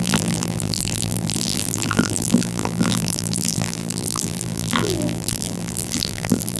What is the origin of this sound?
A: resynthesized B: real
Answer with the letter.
A